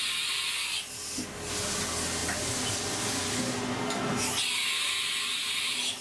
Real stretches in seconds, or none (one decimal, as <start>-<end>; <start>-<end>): 0.0-6.0